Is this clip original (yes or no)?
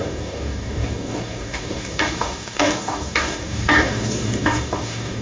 no